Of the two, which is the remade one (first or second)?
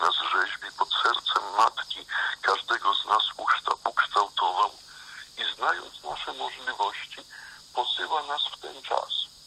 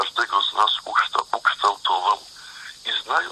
second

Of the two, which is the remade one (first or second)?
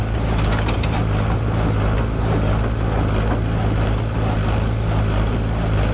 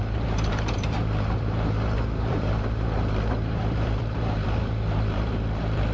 second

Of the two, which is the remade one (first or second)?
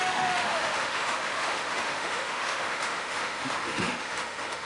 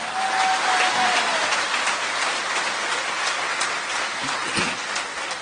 first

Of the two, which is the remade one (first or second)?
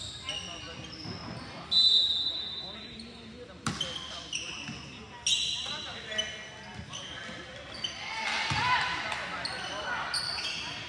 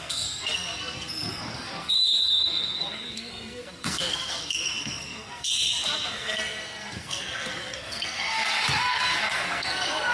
second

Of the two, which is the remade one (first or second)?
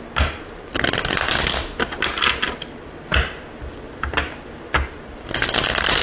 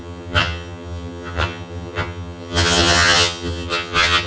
second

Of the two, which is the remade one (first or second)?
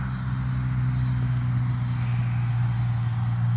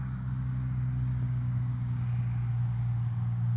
second